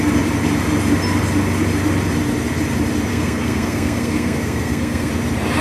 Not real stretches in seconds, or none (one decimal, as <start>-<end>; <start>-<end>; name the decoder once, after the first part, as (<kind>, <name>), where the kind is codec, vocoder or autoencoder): 3.1-5.1 (codec, SNAC)